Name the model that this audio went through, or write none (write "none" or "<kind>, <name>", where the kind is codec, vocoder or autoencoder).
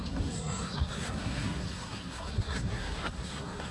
codec, SNAC